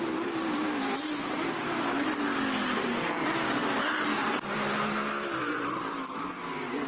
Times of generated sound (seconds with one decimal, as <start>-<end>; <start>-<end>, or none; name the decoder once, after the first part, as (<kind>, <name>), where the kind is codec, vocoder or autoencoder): 0.6-2.0 (vocoder, BigVGAN v2); 3.6-6.3